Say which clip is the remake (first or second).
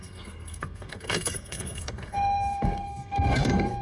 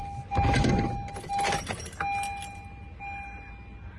first